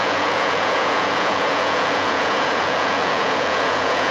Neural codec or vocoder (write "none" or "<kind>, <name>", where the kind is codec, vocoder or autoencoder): vocoder, Vocos